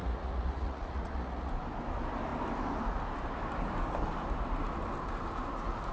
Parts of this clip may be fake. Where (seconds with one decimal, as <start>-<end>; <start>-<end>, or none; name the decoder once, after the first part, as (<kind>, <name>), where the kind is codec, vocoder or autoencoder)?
0.0-1.5 (vocoder, Vocos)